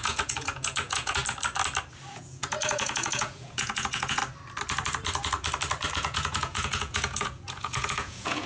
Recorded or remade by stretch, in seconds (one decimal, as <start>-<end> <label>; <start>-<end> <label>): 0.0-1.2 remade; 1.2-2.1 recorded; 2.1-4.2 remade; 4.2-5.9 recorded; 5.9-8.5 remade